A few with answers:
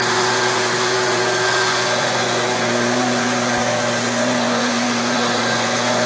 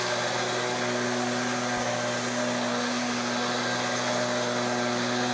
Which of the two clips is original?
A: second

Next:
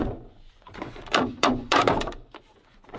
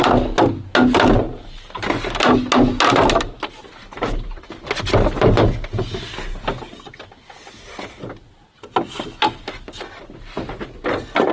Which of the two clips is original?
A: second